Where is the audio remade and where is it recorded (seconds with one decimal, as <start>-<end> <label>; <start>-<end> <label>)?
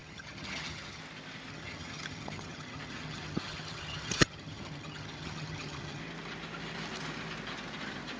0.0-1.0 remade; 1.0-1.5 recorded; 1.5-6.0 remade; 6.0-8.2 recorded